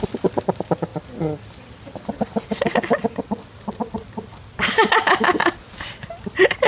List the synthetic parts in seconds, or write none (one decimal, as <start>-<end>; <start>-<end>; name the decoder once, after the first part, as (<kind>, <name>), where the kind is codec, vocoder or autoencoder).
none